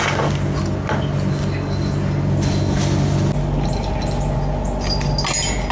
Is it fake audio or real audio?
real